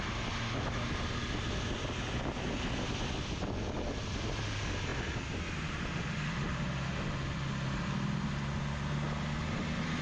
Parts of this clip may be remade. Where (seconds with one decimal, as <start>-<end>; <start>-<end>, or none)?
4.9-5.5